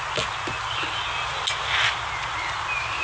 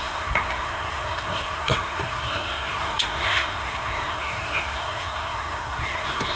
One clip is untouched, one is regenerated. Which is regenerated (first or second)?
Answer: second